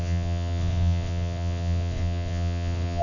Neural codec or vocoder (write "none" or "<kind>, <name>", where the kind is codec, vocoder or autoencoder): vocoder, WaveNeXt